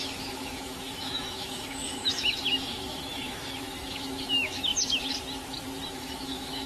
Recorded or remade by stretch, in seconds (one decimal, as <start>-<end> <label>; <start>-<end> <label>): 0.0-4.7 remade; 4.7-5.9 recorded; 5.9-6.7 remade